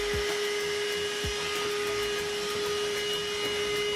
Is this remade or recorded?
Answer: recorded